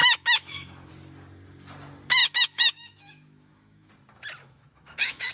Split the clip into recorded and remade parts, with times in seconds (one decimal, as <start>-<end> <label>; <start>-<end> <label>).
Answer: 0.0-0.9 remade; 0.9-2.2 recorded; 2.2-3.9 remade; 3.9-4.4 recorded; 4.4-5.3 remade